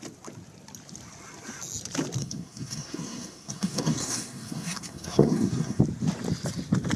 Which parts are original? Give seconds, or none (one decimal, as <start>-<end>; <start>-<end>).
0.0-2.2; 5.8-7.0